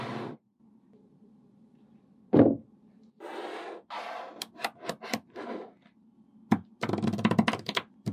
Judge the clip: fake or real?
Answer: real